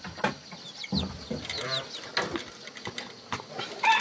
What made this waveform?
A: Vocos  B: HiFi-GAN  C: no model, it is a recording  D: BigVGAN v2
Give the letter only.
C